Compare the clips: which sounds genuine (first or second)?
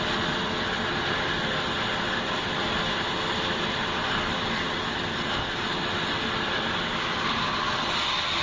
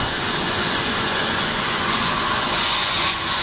first